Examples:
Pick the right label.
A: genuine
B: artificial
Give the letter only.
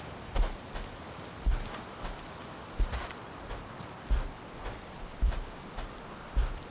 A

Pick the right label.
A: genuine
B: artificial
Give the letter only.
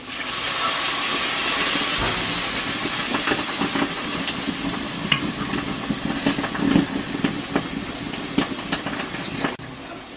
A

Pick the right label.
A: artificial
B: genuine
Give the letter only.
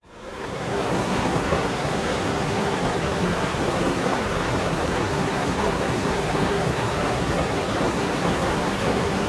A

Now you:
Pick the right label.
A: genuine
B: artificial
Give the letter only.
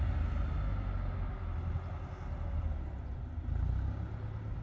A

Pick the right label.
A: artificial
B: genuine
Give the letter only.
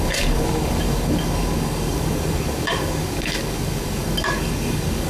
A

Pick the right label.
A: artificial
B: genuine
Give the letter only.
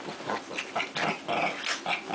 B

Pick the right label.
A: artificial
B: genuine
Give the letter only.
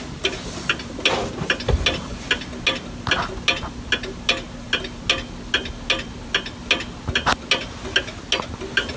B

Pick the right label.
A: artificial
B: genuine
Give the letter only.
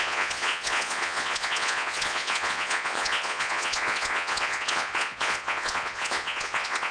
A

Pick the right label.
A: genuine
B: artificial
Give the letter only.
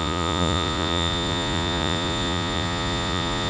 B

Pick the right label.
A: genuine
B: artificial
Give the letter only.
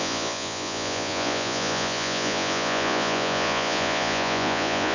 B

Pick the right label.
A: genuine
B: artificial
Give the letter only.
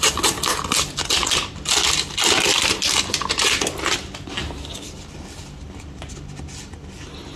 A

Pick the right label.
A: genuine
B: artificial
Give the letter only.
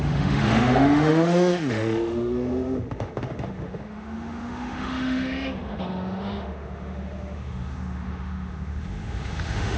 B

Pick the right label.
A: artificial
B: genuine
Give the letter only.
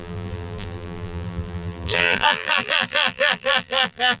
A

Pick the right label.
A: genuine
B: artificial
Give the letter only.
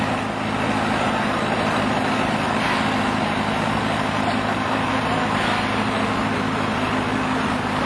A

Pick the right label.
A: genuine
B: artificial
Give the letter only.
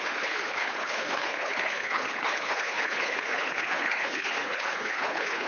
B